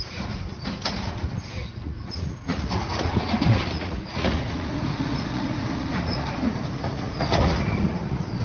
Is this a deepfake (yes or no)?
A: yes